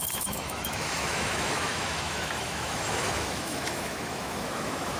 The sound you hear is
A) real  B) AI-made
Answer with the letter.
B